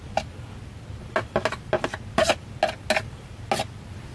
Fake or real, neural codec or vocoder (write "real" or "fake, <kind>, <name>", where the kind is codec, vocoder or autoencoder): real